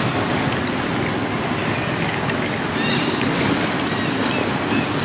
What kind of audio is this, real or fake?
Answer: real